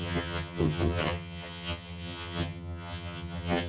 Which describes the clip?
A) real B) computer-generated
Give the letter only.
B